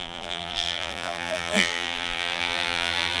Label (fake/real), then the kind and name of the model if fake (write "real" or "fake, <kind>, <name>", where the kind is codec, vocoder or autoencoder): fake, vocoder, BigVGAN v2